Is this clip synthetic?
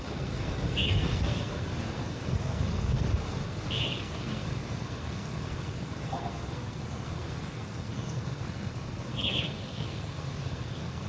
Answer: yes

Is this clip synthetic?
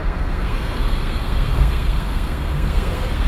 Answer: yes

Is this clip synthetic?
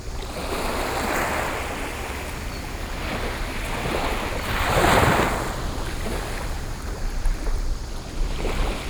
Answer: no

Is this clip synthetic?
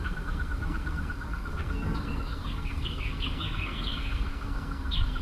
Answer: yes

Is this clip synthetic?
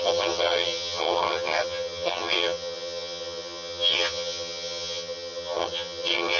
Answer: yes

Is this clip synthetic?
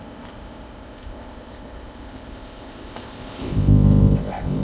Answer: yes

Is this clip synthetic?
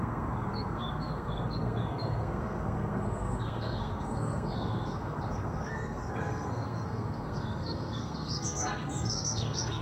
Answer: yes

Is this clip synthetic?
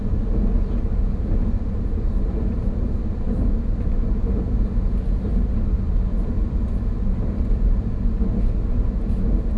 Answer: no